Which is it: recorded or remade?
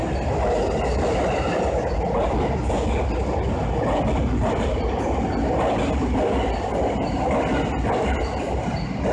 recorded